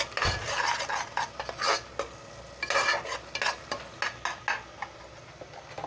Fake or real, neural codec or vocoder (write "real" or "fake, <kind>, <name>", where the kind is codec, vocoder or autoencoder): real